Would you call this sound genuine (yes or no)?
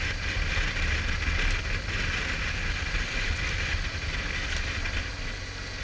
yes